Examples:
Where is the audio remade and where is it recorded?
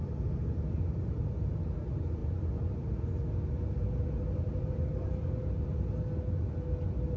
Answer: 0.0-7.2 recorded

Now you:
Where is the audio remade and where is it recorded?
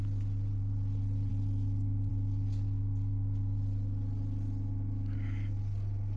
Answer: 0.0-6.2 recorded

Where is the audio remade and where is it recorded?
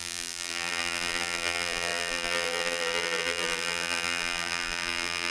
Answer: 0.0-5.3 remade